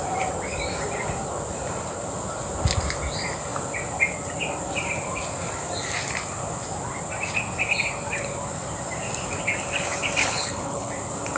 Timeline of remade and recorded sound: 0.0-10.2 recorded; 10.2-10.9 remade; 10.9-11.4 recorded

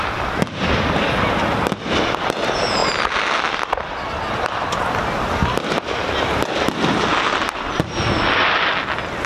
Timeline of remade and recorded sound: 0.0-9.3 recorded

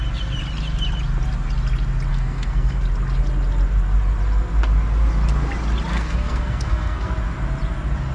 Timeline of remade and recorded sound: 0.0-2.1 recorded; 2.1-2.8 remade; 2.8-5.9 recorded; 5.9-7.1 remade; 7.1-8.1 recorded